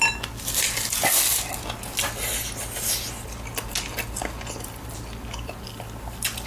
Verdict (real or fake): real